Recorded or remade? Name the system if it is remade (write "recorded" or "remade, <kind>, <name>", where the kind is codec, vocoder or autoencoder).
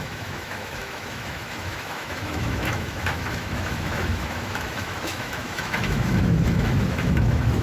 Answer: remade, autoencoder, DAC-VAE